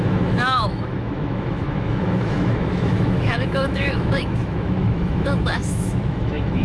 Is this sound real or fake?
fake